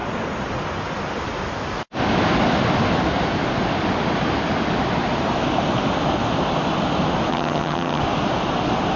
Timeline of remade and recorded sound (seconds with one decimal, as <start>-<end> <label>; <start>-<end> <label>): 0.0-7.3 recorded; 7.3-8.0 remade; 8.0-9.0 recorded